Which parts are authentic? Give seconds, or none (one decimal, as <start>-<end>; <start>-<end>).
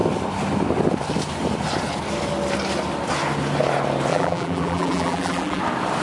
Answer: 0.0-4.1; 5.6-6.0